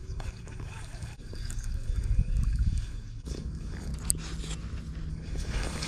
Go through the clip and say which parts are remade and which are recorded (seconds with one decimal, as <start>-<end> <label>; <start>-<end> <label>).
0.0-3.9 remade; 3.9-5.1 recorded; 5.1-5.9 remade